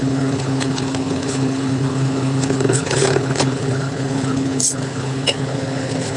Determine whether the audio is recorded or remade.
remade